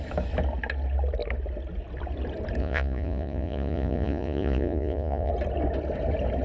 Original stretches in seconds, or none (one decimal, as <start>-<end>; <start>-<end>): 0.0-2.6; 5.3-6.4